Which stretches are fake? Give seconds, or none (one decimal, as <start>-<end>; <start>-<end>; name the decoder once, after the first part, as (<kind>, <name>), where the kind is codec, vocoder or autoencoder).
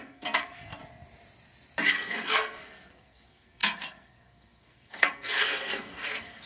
0.0-0.8 (codec, SNAC); 1.9-6.5